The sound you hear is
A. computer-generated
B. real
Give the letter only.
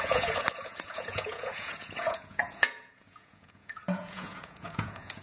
A